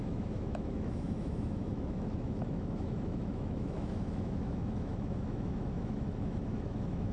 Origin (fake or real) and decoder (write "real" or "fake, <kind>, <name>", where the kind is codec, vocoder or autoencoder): fake, autoencoder, DAC-VAE